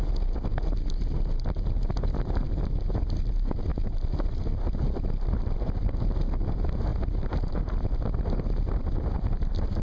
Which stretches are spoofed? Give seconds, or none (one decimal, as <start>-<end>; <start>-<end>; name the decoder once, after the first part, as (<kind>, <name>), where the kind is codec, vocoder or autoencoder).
none